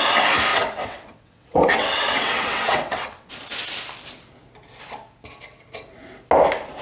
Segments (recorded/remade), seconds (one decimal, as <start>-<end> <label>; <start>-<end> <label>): 0.0-0.5 recorded; 0.5-3.3 remade; 3.3-6.8 recorded

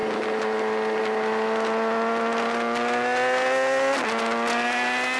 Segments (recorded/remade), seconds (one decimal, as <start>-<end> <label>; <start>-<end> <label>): 0.0-5.2 recorded

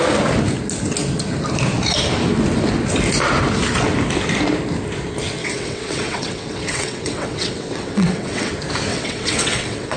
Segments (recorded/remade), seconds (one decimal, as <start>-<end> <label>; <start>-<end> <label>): 0.0-5.4 recorded; 5.4-8.5 remade; 8.5-8.9 recorded; 8.9-10.0 remade